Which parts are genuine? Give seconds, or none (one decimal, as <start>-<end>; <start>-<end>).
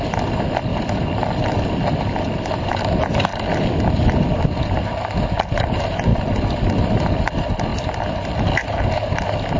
0.0-0.7; 1.7-3.3; 4.4-7.7; 8.9-9.6